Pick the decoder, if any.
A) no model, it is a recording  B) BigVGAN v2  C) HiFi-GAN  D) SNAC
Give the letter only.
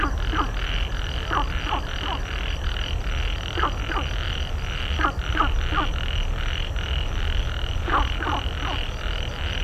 A